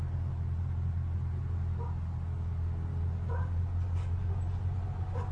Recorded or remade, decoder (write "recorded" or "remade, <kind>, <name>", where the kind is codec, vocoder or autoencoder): recorded